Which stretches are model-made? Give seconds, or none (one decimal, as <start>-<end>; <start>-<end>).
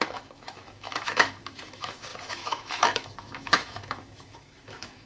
0.0-5.1